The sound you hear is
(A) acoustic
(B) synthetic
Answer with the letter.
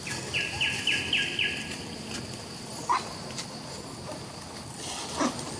A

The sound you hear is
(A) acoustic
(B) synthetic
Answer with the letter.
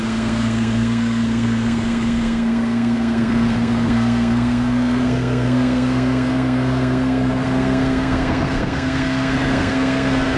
B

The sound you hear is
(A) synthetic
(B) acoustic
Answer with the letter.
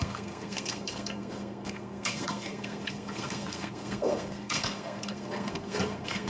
A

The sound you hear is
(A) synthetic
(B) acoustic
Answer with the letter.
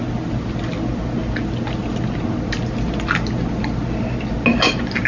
B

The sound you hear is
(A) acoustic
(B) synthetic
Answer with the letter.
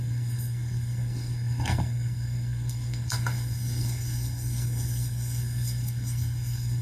B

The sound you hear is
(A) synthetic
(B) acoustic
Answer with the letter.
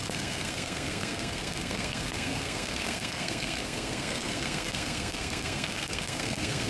A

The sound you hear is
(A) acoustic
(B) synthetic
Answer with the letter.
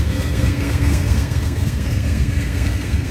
B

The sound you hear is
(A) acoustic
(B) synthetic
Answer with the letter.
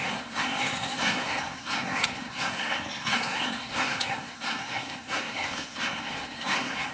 B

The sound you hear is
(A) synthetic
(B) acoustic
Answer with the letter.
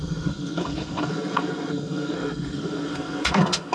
A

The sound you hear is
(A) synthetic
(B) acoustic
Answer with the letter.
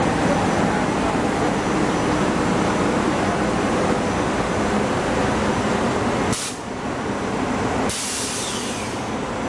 B